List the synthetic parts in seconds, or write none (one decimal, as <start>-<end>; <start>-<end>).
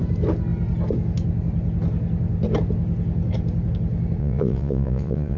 4.2-5.4